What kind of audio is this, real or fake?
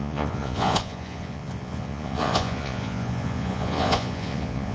fake